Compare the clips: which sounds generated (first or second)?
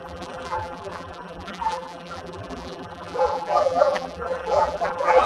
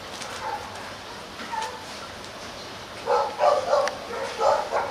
first